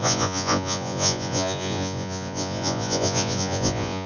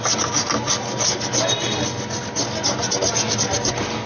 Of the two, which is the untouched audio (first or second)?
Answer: second